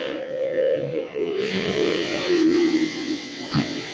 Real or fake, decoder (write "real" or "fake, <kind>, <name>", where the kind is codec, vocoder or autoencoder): fake, vocoder, WaveNeXt